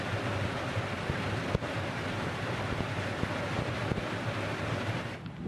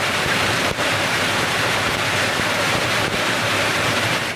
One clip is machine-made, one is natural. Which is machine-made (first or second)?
second